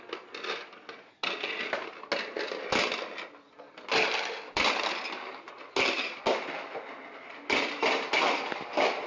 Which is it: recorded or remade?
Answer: recorded